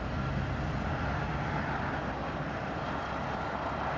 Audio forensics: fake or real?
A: real